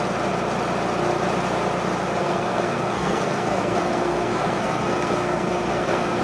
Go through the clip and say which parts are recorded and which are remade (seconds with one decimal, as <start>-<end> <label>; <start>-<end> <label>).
0.0-2.2 recorded; 2.2-6.2 remade